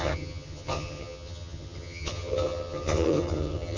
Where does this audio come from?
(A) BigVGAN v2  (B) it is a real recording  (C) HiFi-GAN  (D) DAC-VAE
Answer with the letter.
C